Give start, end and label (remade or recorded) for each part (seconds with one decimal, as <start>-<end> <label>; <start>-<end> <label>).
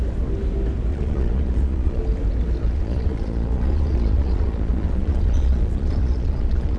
0.0-0.9 recorded; 0.9-2.0 remade; 2.0-2.6 recorded; 2.6-6.8 remade